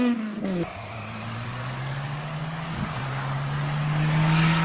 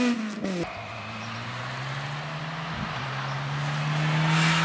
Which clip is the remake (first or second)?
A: first